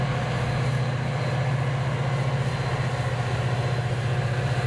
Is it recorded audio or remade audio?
recorded